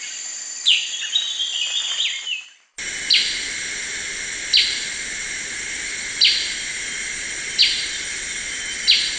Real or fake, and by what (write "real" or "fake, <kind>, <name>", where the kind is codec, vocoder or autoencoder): real